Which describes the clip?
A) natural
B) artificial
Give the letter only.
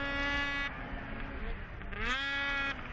A